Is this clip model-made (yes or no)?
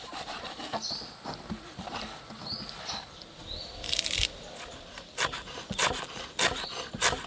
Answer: yes